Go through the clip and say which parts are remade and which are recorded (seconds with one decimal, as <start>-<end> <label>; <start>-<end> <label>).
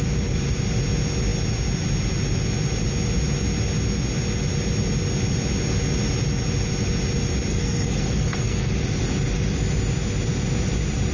0.0-7.5 recorded; 7.5-8.7 remade; 8.7-11.1 recorded